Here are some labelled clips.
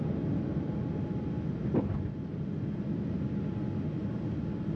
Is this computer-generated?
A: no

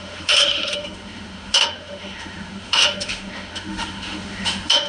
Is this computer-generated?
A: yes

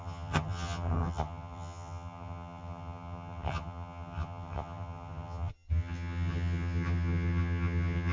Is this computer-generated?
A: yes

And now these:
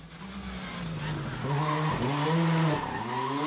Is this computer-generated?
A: no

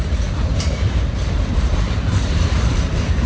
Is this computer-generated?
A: yes